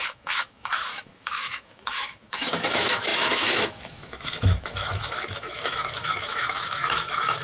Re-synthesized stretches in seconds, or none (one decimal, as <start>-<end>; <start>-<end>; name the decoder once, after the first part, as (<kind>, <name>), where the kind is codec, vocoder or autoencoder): 0.0-7.4 (autoencoder, DAC-VAE)